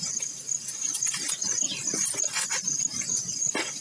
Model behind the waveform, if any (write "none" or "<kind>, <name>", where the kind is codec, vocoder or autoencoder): none